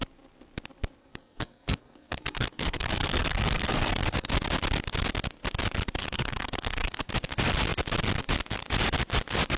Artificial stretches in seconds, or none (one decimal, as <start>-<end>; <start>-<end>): 1.0-4.3; 6.0-7.1